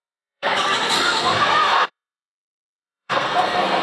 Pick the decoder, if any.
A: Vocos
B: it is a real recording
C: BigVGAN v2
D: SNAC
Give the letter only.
D